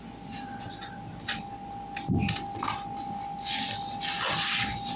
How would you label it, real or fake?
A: real